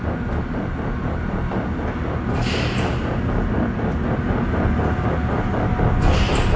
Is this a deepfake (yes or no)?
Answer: no